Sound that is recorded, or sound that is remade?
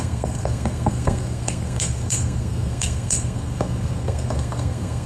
remade